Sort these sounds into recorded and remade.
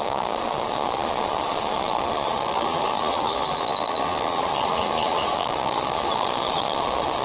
remade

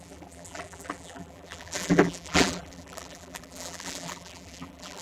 remade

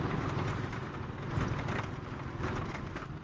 remade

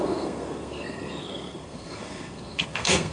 remade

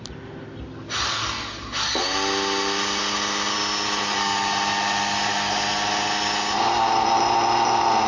recorded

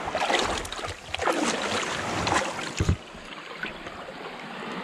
recorded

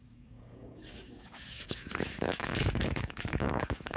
remade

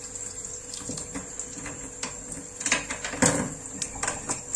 recorded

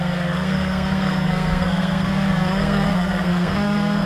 remade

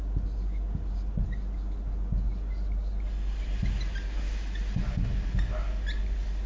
recorded